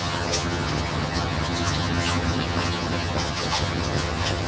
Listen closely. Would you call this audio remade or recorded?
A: remade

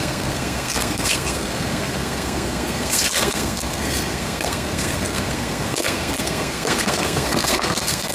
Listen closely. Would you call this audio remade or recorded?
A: remade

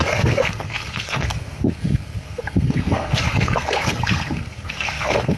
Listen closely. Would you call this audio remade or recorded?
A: remade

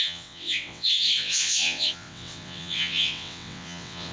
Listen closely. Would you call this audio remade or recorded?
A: remade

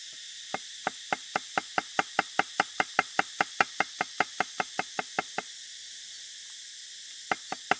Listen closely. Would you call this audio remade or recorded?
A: recorded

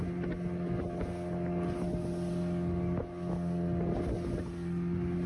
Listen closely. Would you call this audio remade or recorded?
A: recorded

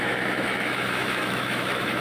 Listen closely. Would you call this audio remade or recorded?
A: remade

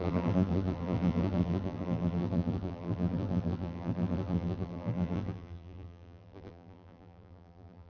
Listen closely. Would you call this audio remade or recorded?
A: remade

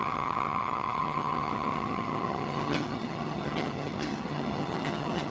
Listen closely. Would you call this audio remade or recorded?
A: remade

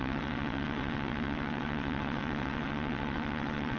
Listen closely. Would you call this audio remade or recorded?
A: remade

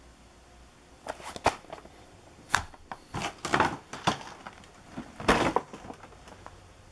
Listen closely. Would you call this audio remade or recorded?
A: recorded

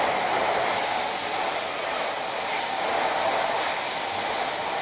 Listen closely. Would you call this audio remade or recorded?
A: recorded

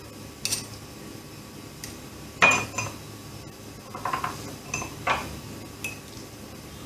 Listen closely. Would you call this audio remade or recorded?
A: recorded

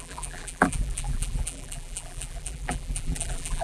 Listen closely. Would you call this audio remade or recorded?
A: remade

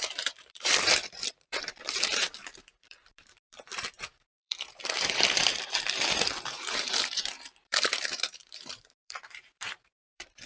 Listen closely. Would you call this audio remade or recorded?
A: remade